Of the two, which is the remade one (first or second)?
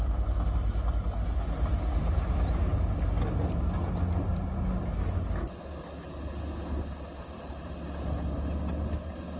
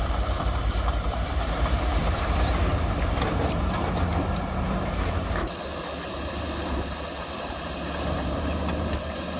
second